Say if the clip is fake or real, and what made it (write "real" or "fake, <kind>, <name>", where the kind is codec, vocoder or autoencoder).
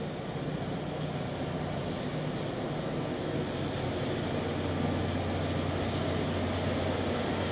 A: real